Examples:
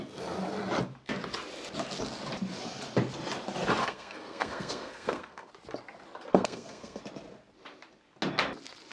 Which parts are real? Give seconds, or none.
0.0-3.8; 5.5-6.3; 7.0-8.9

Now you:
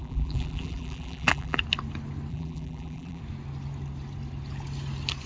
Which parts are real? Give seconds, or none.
1.6-2.3; 3.2-5.3

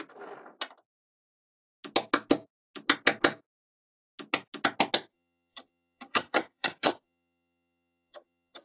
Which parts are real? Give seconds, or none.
0.0-5.1

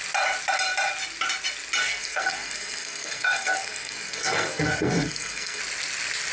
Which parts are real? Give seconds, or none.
0.0-1.8; 5.6-6.3

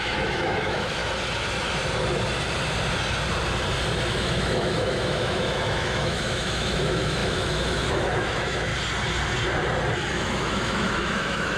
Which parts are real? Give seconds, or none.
1.0-4.1; 8.7-10.1

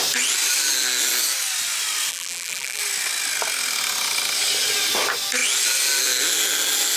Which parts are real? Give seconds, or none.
0.0-2.1; 2.8-7.0